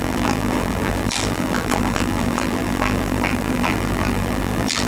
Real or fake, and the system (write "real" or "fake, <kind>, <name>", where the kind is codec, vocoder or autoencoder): fake, vocoder, BigVGAN v2